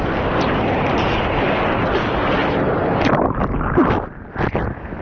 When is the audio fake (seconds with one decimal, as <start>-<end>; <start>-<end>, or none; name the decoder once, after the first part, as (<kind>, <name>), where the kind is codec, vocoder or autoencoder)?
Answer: none